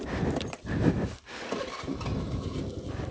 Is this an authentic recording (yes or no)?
yes